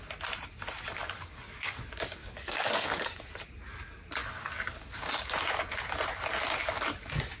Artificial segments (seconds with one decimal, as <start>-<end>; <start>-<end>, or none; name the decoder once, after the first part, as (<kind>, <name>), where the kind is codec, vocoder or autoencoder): 1.0-1.8 (codec, DAC); 2.2-3.2; 4.2-5.2